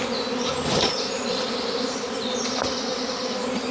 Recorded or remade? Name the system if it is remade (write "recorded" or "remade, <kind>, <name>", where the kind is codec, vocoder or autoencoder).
recorded